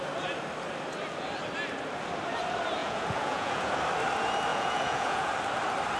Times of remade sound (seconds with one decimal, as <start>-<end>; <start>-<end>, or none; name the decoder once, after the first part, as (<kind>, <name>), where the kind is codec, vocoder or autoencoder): 2.8-3.7 (vocoder, Vocos); 4.5-5.3